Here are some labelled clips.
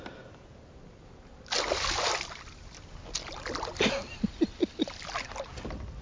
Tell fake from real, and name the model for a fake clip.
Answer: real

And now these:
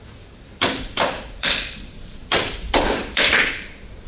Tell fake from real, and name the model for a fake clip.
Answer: fake, vocoder, BigVGAN v2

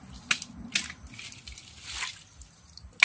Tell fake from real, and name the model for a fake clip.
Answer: real